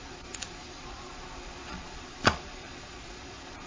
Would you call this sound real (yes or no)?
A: no